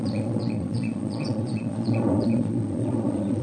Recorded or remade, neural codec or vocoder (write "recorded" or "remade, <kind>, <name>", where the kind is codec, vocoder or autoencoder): remade, vocoder, Vocos